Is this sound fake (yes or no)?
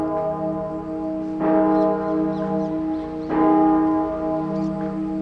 no